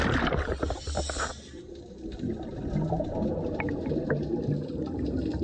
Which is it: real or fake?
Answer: real